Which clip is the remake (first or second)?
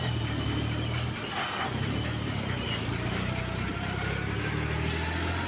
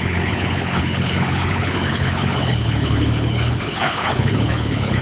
second